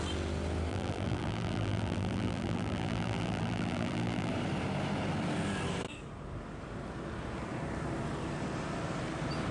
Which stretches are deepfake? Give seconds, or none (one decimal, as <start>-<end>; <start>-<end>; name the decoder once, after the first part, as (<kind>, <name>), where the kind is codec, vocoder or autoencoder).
0.7-4.3 (vocoder, BigVGAN v2)